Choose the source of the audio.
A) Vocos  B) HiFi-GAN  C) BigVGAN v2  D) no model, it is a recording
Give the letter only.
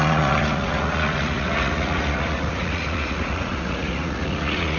A